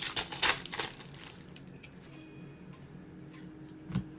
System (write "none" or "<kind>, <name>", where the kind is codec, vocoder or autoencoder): none